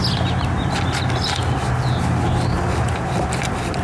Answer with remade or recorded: recorded